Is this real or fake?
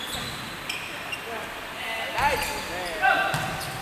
real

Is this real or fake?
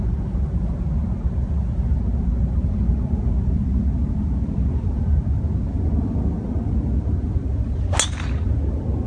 real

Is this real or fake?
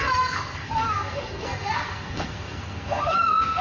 fake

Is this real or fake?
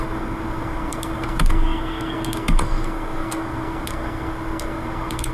fake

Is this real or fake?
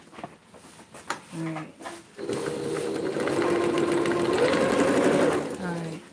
real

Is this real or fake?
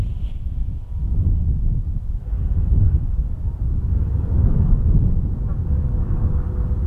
real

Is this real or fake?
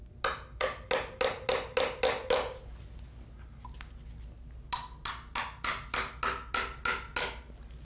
real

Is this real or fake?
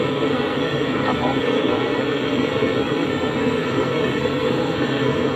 fake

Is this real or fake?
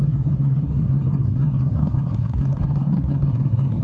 fake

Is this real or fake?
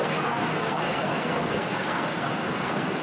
fake